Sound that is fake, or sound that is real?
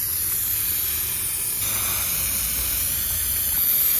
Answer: real